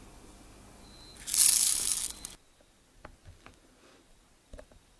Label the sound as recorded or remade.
recorded